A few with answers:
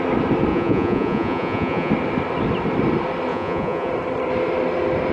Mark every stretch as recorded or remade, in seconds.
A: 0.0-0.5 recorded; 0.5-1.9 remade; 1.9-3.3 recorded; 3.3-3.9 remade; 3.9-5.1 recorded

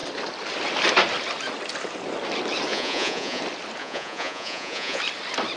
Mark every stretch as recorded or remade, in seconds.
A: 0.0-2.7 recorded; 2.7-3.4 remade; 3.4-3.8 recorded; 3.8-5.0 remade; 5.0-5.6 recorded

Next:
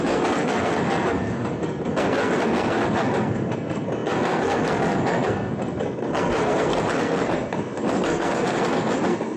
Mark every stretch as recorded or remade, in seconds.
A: 0.0-9.4 remade

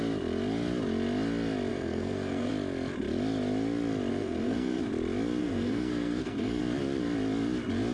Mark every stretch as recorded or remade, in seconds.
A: 0.0-1.7 recorded; 1.7-2.5 remade; 2.5-4.1 recorded; 4.1-4.8 remade; 4.8-5.4 recorded; 5.4-6.6 remade; 6.6-7.9 recorded